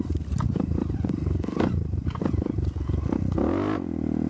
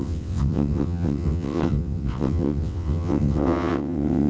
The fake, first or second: second